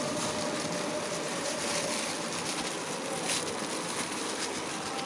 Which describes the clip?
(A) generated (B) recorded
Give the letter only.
B